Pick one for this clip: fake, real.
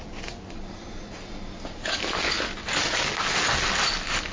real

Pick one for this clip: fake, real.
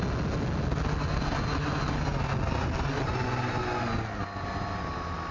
real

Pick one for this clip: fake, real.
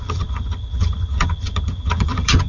fake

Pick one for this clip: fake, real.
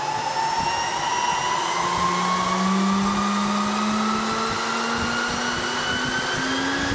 real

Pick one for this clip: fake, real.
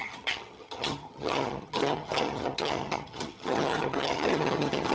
fake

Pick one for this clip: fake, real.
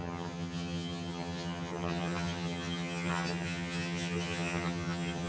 fake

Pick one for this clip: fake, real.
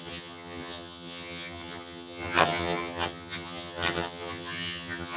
fake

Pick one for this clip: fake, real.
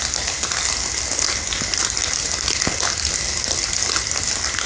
real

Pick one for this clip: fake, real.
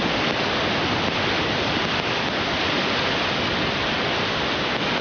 real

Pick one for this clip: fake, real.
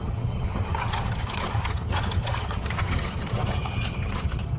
fake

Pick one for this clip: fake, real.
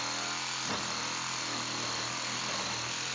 real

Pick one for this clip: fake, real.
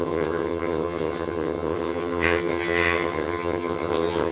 fake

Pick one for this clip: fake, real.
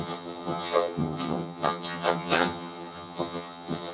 fake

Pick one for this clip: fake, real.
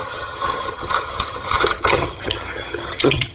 fake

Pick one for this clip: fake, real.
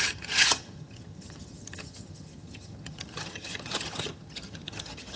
fake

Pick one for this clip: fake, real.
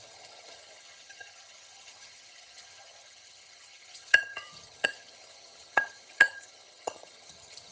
fake